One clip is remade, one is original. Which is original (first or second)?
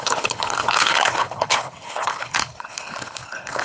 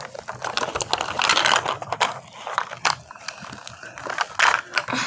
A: second